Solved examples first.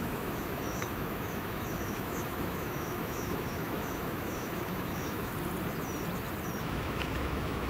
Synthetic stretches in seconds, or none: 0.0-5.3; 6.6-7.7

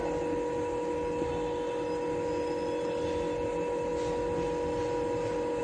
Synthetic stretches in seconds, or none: none

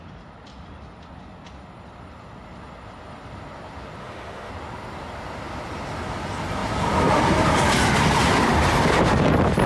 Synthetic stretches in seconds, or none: 4.0-4.5